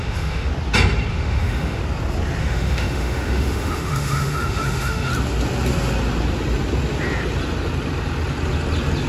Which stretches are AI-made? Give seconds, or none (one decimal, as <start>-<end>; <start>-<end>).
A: 0.0-0.5; 1.1-1.8; 2.4-5.1